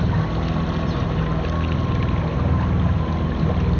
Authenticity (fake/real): real